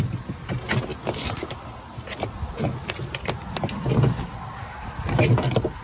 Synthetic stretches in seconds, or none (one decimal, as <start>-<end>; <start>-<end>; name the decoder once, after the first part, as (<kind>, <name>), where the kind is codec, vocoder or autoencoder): none